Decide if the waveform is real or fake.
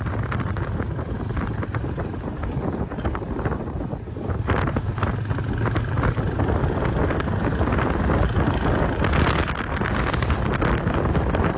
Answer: real